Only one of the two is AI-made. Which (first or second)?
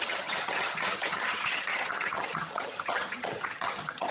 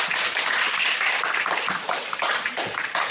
first